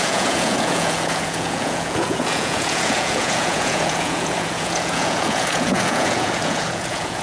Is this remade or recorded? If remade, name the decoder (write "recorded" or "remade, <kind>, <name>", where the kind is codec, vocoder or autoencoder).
remade, vocoder, Vocos